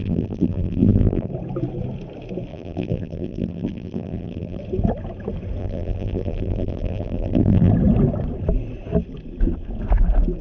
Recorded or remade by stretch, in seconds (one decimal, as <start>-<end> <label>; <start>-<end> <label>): 0.0-1.3 remade; 1.3-2.5 recorded; 2.5-4.6 remade; 4.6-5.6 recorded; 5.6-7.7 remade; 7.7-10.4 recorded